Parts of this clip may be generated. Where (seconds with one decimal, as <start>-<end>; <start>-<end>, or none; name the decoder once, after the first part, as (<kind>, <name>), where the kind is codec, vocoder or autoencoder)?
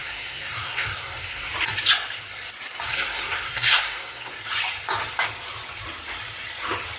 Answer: 0.0-1.5 (codec, SNAC); 2.9-4.3